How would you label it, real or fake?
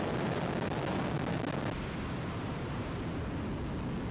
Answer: real